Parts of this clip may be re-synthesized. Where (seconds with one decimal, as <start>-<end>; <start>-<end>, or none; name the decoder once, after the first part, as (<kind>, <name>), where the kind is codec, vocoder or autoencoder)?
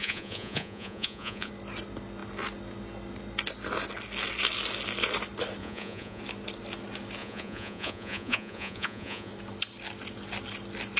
0.0-1.5 (vocoder, Vocos); 5.6-6.2; 7.2-9.3